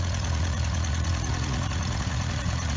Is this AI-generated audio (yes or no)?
yes